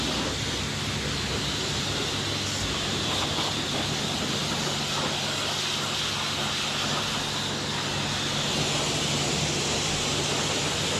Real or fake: real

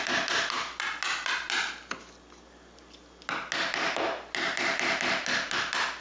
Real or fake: real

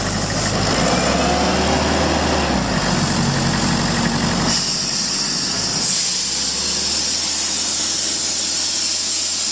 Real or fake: real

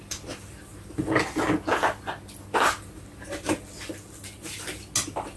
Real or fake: real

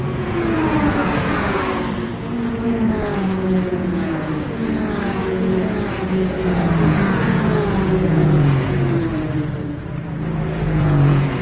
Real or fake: fake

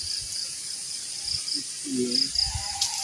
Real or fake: real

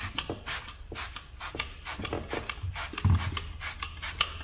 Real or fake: real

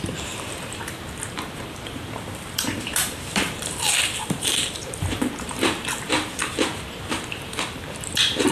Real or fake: fake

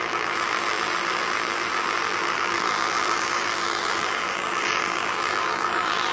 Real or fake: fake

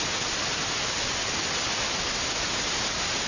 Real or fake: real